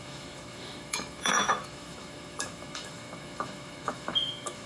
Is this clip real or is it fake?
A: fake